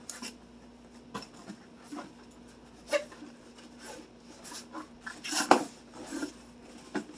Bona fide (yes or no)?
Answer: yes